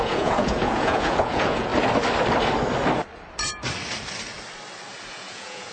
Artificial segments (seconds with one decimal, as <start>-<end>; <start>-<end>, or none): 0.0-1.7; 5.1-5.7